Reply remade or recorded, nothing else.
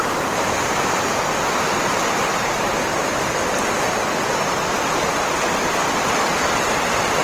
recorded